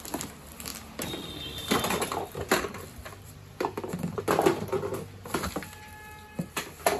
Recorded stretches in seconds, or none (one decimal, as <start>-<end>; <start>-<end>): 0.0-0.7; 4.2-7.0